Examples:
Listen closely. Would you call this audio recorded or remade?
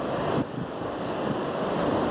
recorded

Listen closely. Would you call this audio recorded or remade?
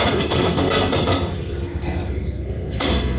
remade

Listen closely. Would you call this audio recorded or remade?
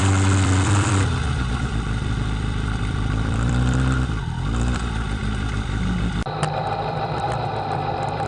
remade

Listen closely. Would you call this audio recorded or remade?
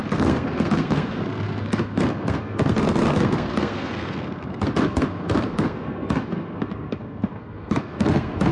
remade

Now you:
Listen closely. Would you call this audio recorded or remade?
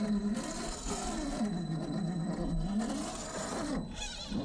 recorded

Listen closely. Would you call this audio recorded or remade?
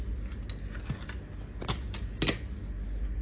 recorded